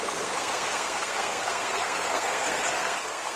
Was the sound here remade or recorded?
remade